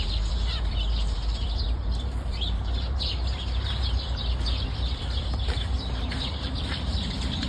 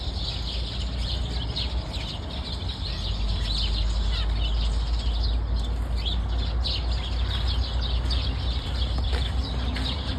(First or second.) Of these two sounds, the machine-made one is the first